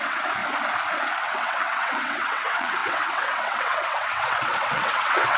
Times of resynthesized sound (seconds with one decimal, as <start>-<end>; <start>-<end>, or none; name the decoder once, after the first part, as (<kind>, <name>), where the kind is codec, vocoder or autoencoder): 0.0-0.4 (vocoder, WaveNeXt); 1.2-5.4